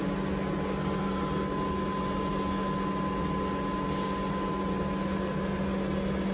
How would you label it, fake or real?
real